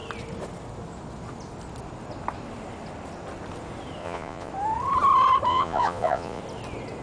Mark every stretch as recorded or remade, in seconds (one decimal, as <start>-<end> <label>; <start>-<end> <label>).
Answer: 0.0-4.0 recorded; 4.0-4.5 remade; 4.5-5.5 recorded; 5.5-6.4 remade; 6.4-7.0 recorded